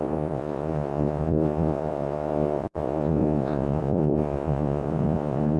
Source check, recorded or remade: remade